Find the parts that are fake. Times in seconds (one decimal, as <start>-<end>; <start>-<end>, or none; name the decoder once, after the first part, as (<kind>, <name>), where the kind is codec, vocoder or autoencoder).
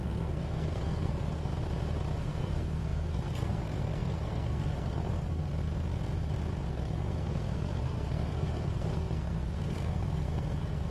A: 0.0-1.5 (codec, SNAC); 2.2-5.5; 6.7-10.9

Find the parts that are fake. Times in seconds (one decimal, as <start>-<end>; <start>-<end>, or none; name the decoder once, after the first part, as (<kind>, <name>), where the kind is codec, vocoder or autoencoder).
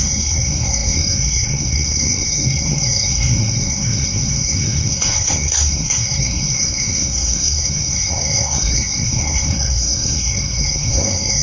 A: 0.0-11.4 (codec, SNAC)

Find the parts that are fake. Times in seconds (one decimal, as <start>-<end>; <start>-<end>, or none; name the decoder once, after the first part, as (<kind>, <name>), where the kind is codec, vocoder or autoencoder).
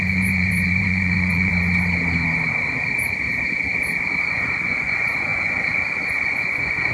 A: 0.0-1.5 (vocoder, Vocos); 4.2-6.9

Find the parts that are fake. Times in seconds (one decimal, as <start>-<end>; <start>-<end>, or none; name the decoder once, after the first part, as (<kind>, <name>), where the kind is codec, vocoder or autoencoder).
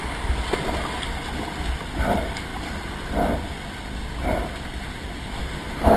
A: 5.4-6.0 (autoencoder, DAC-VAE)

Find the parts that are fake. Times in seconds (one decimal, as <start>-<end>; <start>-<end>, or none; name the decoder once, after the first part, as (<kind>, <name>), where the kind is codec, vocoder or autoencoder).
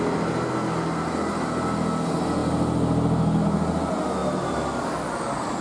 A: none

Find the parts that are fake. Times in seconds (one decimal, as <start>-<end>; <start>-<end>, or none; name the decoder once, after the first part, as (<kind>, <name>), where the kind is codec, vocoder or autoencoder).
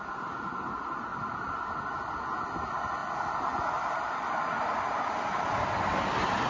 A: none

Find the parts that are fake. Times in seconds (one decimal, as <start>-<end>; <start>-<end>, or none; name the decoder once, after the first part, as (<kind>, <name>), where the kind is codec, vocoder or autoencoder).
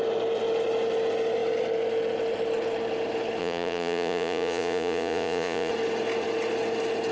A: 3.4-5.7 (vocoder, Vocos)